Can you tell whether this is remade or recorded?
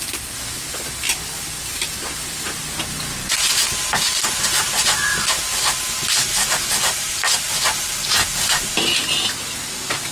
recorded